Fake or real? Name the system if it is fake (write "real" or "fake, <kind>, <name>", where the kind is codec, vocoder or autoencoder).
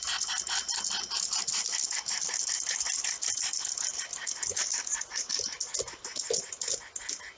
real